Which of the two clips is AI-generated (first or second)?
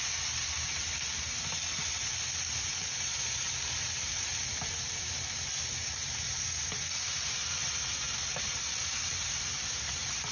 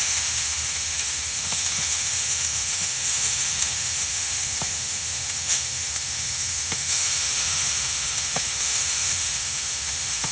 second